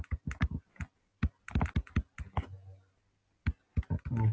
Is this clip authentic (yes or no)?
yes